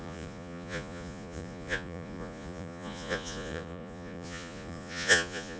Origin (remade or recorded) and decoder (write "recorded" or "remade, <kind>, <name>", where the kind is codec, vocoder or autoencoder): remade, vocoder, Vocos